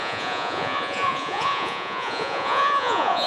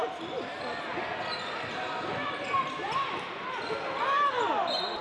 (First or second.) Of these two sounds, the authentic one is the second